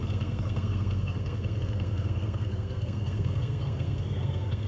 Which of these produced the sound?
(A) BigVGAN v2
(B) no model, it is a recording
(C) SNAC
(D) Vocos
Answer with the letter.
C